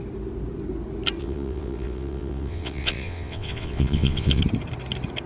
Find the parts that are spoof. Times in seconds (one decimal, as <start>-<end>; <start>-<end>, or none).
1.2-4.4